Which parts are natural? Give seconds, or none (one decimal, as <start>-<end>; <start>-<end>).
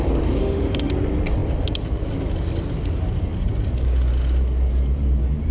0.0-0.4; 0.9-5.5